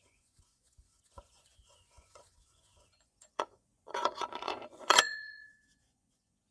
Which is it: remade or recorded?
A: remade